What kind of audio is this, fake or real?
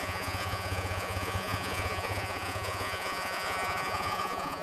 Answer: fake